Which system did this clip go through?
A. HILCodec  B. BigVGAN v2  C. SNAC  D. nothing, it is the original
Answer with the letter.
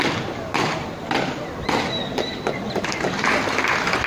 D